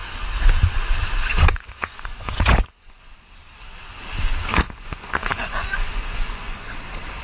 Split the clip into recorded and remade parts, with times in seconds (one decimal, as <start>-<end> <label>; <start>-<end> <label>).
0.0-1.3 recorded; 1.3-3.0 remade; 3.0-4.5 recorded; 4.5-6.7 remade; 6.7-7.2 recorded